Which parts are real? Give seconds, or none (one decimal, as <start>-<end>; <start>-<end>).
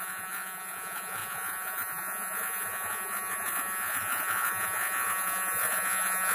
none